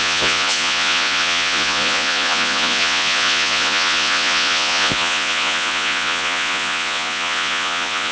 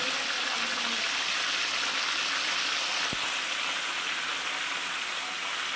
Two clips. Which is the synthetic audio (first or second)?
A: first